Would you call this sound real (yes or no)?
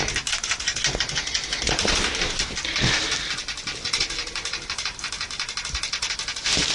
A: yes